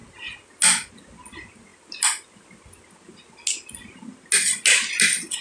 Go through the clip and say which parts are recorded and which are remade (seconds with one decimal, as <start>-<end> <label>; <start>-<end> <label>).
0.0-5.4 recorded